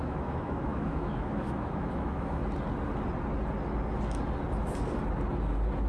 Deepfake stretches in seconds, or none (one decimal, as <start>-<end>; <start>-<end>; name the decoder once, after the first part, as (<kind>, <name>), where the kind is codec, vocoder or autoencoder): 0.0-2.4 (autoencoder, DAC-VAE)